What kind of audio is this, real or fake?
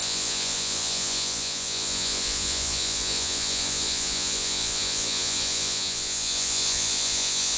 fake